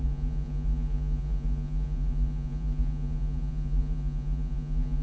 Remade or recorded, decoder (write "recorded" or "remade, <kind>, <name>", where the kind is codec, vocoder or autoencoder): remade, vocoder, Vocos